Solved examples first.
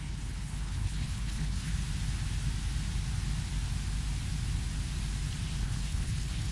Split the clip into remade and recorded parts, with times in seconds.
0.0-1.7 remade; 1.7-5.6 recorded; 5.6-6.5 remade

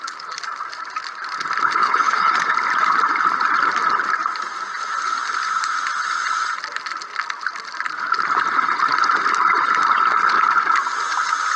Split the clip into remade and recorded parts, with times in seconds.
0.0-1.8 recorded; 1.8-2.3 remade; 2.3-11.6 recorded

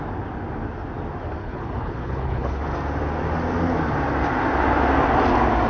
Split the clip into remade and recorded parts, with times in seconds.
0.0-1.4 recorded; 1.4-2.6 remade; 2.6-5.7 recorded

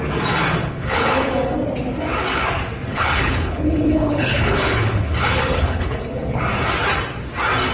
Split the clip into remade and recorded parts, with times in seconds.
0.0-0.6 recorded; 0.6-1.3 remade; 1.3-2.9 recorded; 2.9-6.4 remade; 6.4-7.7 recorded

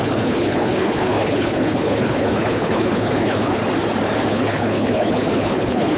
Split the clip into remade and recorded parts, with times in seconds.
0.0-3.6 remade; 3.6-4.3 recorded; 4.3-6.0 remade